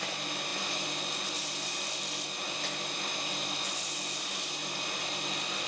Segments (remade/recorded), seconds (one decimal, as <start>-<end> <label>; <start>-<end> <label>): 0.0-5.7 recorded